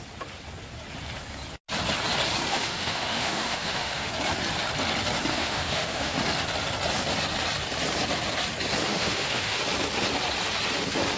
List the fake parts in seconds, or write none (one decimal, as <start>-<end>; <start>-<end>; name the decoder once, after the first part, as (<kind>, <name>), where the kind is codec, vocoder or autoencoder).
2.5-4.1 (autoencoder, DAC-VAE); 5.3-6.2; 8.9-9.6